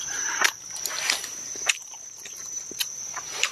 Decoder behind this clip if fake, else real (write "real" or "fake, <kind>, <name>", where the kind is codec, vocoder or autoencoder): real